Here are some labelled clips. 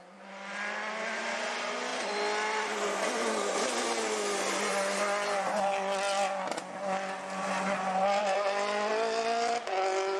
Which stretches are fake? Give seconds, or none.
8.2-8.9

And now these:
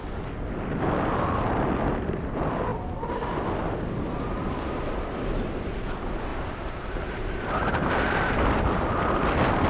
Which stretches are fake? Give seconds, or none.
2.0-6.3; 7.3-9.7